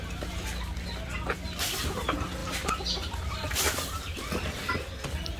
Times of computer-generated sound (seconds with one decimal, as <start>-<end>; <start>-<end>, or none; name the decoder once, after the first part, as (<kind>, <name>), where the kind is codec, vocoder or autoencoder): 2.4-4.7 (vocoder, BigVGAN v2)